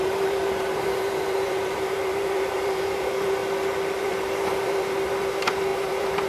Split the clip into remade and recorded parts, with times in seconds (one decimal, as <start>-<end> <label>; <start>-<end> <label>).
0.0-3.4 remade; 3.4-4.0 recorded; 4.0-6.3 remade